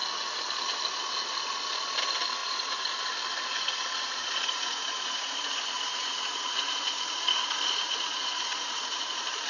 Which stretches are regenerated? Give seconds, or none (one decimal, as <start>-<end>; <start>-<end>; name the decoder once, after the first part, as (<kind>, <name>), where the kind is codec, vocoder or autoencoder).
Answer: 2.4-3.0 (vocoder, Vocos); 4.2-9.1